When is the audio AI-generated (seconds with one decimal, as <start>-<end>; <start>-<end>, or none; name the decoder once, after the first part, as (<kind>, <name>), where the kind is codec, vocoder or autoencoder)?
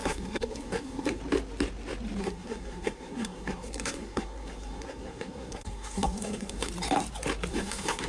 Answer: 0.0-1.2 (codec, SNAC); 2.2-6.7; 7.5-8.1